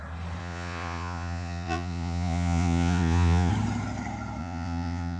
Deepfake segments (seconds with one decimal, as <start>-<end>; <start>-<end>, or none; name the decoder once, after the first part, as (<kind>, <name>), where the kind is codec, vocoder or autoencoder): 0.4-3.5 (vocoder, Vocos); 4.4-5.2